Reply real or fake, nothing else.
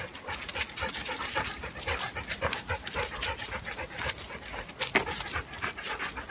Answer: real